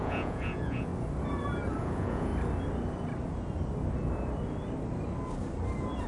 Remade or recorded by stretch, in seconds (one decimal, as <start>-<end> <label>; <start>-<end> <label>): 0.0-0.9 remade; 0.9-1.8 recorded; 1.8-2.3 remade; 2.3-6.1 recorded